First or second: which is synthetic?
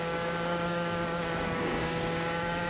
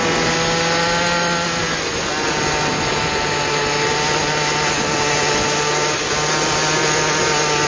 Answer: first